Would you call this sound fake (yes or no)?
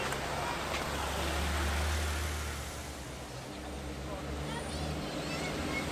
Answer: no